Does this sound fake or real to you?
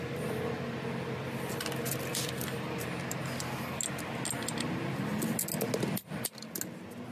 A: real